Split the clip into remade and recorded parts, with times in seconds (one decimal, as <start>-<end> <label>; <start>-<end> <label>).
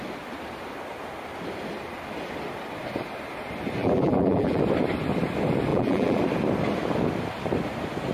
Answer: 0.0-3.8 recorded; 3.8-4.6 remade; 4.6-5.7 recorded; 5.7-6.2 remade; 6.2-8.1 recorded